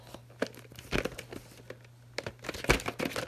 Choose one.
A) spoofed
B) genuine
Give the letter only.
B